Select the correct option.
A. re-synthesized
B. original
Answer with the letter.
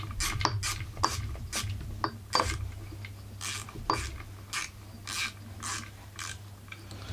B